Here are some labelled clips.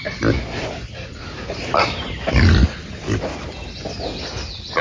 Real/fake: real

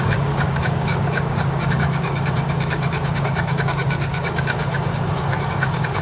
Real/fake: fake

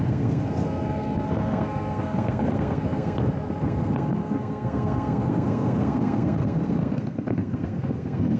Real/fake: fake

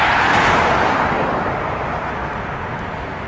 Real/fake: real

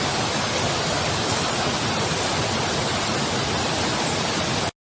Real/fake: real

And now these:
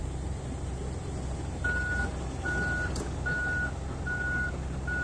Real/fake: real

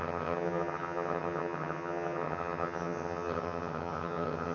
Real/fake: fake